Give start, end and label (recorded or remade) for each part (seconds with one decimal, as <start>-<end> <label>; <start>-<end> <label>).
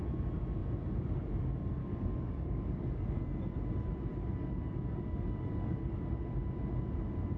0.0-1.8 recorded; 1.8-3.2 remade; 3.2-4.1 recorded; 4.1-6.0 remade; 6.0-7.4 recorded